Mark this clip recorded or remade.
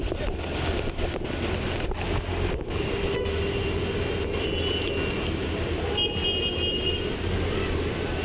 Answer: recorded